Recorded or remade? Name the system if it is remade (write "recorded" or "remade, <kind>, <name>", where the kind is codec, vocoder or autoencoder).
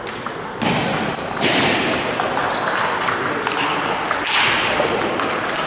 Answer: recorded